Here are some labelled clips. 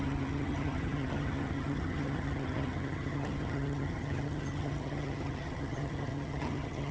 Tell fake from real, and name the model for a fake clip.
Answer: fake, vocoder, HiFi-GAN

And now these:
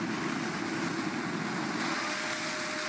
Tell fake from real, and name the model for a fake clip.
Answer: real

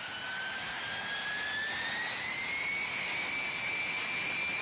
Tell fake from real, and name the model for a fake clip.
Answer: real